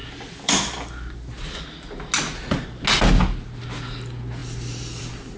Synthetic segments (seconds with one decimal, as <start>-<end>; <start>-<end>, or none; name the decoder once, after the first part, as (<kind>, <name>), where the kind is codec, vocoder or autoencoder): 0.0-0.5 (vocoder, BigVGAN v2)

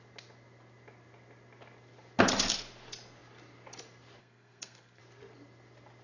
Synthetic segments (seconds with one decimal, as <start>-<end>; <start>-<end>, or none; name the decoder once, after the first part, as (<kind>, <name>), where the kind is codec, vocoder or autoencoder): 4.2-5.0 (codec, SNAC)

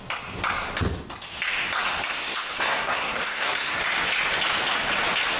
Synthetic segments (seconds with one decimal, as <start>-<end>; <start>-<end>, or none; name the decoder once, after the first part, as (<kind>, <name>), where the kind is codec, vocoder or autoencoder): 2.1-3.8 (codec, SNAC)

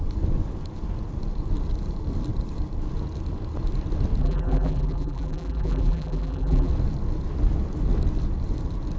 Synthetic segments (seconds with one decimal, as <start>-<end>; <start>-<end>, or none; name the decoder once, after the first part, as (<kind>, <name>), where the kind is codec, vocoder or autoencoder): 4.2-6.7 (vocoder, BigVGAN v2)

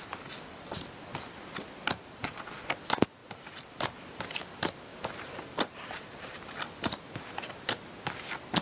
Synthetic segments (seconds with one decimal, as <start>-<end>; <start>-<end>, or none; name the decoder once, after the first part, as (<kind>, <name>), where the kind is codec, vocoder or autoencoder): 4.9-6.4 (vocoder, BigVGAN v2)

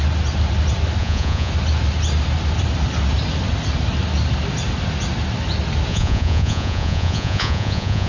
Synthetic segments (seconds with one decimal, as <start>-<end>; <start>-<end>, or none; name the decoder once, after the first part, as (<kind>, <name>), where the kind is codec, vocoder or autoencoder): 1.0-1.5 (vocoder, Vocos); 5.9-8.1